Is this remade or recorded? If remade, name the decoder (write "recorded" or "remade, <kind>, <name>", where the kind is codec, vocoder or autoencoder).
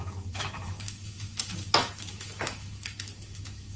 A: remade, autoencoder, DAC-VAE